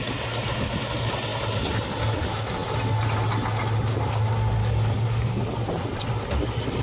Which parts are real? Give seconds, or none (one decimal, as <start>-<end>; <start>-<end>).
0.0-4.6; 5.4-6.8